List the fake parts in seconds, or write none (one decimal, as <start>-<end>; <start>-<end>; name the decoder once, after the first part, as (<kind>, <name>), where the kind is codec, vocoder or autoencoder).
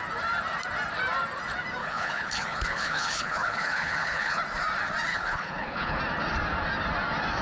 1.8-4.4 (codec, HILCodec); 5.1-6.0